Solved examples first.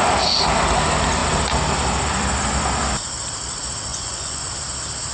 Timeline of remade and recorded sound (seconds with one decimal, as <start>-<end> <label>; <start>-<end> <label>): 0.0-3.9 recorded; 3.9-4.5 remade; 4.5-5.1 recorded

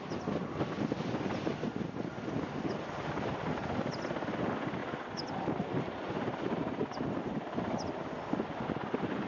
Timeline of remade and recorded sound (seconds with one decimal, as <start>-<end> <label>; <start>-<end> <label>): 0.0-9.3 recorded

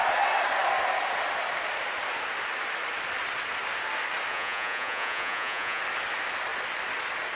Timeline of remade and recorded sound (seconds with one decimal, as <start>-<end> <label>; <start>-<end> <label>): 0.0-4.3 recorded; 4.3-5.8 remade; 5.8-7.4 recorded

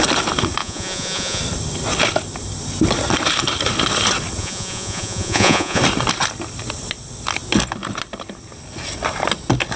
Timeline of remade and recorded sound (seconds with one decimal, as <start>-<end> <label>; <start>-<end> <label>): 0.0-0.6 recorded; 0.6-1.4 remade; 1.4-4.4 recorded; 4.4-5.8 remade; 5.8-9.8 recorded

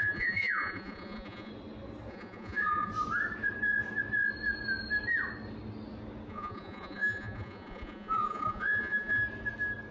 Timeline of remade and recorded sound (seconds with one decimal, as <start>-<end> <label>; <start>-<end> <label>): 0.0-1.5 remade; 1.5-2.1 recorded; 2.1-2.9 remade; 2.9-6.3 recorded; 6.3-9.2 remade; 9.2-9.9 recorded

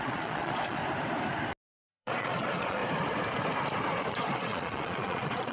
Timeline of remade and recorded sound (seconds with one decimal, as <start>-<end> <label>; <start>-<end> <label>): 0.0-0.8 remade; 0.8-1.9 recorded; 1.9-2.8 remade; 2.8-4.1 recorded; 4.1-5.5 remade